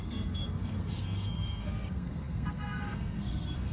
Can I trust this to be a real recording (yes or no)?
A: no